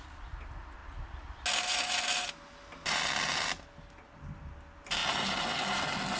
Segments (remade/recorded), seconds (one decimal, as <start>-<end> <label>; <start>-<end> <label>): 0.0-6.2 recorded